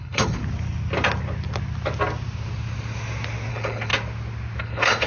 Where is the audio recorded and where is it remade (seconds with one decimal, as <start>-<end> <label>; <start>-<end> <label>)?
0.0-0.4 remade; 0.4-3.5 recorded; 3.5-3.9 remade; 3.9-4.6 recorded; 4.6-5.1 remade